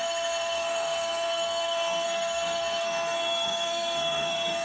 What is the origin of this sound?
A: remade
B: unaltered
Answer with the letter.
A